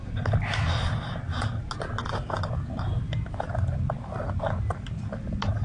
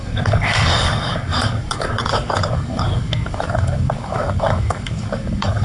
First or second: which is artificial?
second